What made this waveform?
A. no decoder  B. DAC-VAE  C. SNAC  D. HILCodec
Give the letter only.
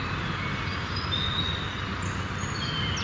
A